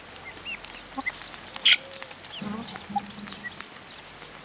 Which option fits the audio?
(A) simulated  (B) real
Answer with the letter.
B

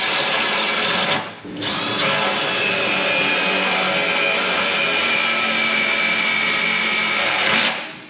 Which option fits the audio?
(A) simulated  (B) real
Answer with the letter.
B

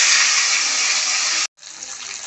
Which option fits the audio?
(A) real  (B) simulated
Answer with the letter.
A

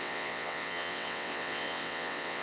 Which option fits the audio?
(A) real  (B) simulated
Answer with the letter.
B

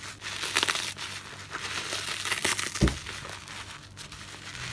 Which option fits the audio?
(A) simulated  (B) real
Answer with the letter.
B